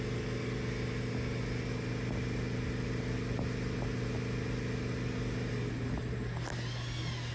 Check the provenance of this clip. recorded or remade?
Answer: recorded